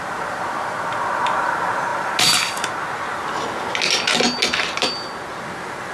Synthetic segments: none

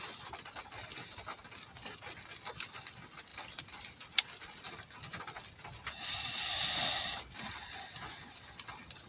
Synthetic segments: none

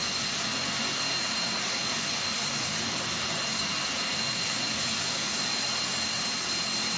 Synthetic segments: 0.0-1.0 (vocoder, Vocos); 1.9-5.6

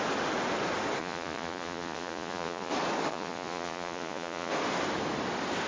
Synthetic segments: 1.0-2.7 (vocoder, Vocos); 3.1-4.5